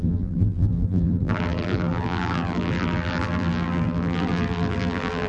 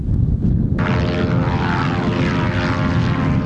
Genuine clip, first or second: second